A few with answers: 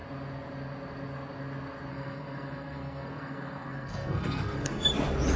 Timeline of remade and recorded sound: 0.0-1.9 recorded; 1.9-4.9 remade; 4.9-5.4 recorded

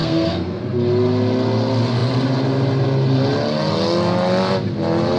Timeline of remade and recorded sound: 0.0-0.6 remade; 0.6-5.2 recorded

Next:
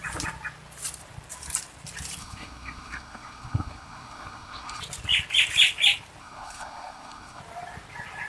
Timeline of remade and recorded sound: 0.0-2.2 recorded; 2.2-4.8 remade; 4.8-6.2 recorded; 6.2-7.4 remade; 7.4-8.3 recorded